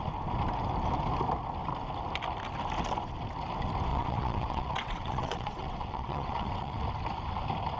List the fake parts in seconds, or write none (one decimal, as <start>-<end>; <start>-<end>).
3.9-6.8